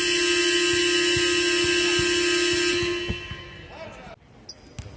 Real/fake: real